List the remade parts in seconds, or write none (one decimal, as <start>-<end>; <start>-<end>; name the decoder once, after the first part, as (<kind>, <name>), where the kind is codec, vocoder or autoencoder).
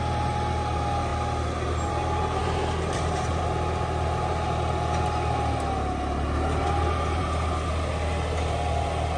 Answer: none